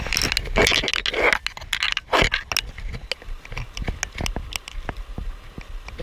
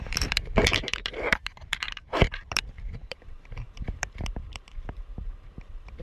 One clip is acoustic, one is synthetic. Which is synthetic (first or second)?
second